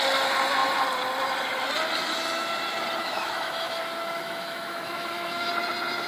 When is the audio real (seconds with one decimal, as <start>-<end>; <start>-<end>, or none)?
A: 0.0-3.0; 5.5-6.1